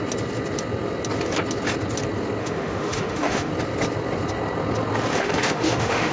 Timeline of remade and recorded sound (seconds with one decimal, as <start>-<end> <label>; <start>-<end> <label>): 0.0-2.4 recorded; 2.4-3.5 remade; 3.5-5.1 recorded; 5.1-6.1 remade